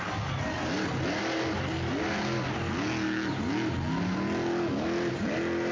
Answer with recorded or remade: recorded